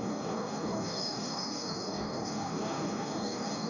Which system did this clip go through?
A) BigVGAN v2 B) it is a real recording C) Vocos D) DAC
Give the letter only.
D